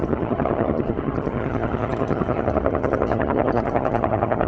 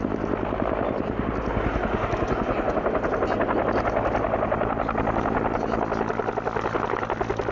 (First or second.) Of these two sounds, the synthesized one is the first